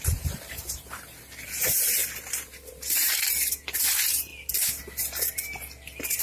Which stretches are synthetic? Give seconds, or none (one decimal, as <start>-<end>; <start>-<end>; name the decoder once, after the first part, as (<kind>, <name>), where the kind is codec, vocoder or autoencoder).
0.0-2.0 (vocoder, BigVGAN v2); 2.7-4.3